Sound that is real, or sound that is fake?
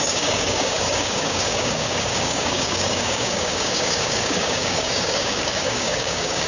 fake